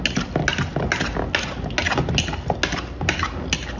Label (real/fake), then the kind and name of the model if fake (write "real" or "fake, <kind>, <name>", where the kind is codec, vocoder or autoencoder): real